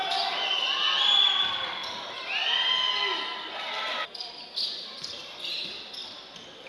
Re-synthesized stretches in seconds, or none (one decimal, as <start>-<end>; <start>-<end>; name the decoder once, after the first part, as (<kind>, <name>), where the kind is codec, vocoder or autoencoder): none